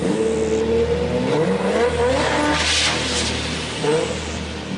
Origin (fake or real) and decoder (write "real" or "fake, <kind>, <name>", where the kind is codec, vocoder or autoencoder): real